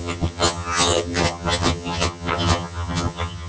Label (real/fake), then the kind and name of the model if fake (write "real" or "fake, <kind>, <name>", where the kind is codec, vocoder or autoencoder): fake, vocoder, HiFi-GAN